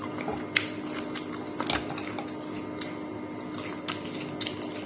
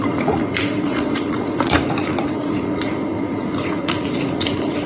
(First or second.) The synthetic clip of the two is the second